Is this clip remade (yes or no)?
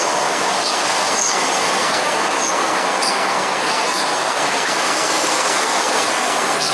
yes